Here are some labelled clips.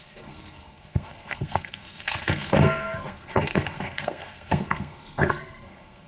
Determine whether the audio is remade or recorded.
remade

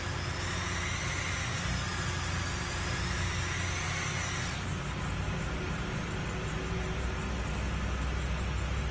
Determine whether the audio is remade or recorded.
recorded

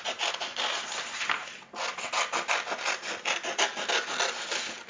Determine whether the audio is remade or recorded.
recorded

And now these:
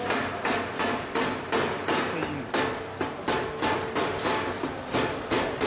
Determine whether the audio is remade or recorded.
recorded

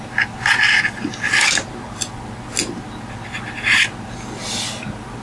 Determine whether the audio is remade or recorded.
recorded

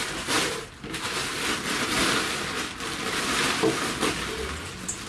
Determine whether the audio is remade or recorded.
recorded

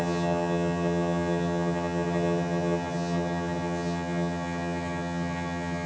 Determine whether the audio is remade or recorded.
remade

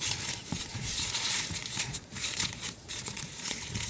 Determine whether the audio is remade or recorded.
remade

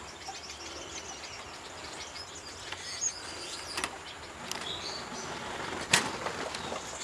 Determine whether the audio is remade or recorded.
recorded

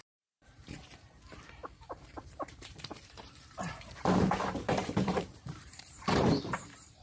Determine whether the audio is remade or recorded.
remade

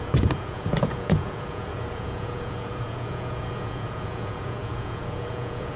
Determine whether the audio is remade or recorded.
remade